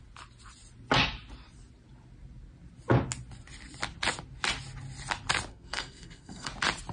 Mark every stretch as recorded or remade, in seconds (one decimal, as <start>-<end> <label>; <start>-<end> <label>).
0.0-5.5 recorded; 5.5-6.5 remade; 6.5-6.9 recorded